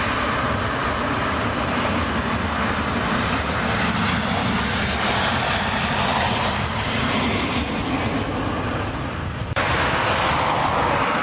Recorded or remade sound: recorded